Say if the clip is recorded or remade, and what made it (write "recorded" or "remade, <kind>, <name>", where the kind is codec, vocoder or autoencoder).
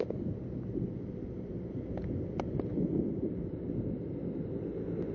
recorded